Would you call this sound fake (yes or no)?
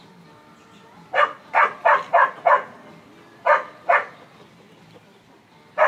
no